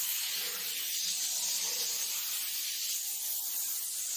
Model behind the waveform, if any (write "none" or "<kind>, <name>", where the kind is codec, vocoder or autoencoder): none